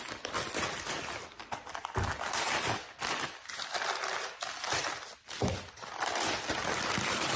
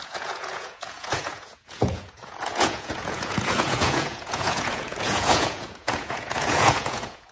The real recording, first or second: first